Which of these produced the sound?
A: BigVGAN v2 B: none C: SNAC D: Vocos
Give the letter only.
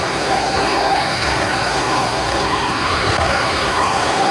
C